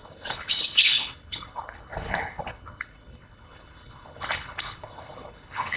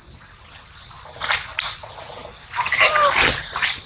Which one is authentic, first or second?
second